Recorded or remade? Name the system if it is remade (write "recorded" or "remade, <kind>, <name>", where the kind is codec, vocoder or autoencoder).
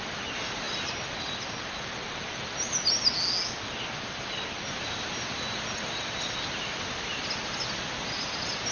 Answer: recorded